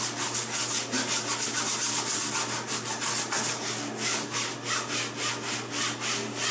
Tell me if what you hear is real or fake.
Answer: real